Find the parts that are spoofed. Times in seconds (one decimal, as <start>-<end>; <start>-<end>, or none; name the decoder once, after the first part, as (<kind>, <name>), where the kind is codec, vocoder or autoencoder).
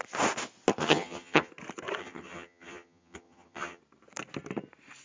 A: 0.8-1.5 (vocoder, HiFi-GAN); 2.0-3.8